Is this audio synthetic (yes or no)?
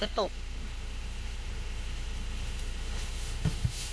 yes